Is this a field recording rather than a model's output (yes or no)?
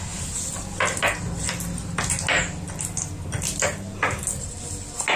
yes